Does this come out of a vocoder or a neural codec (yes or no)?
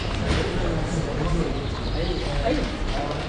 no